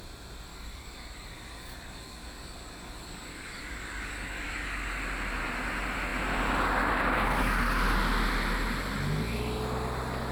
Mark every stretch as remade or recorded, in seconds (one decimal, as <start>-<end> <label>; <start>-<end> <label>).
0.0-0.5 recorded; 0.5-5.0 remade; 5.0-10.3 recorded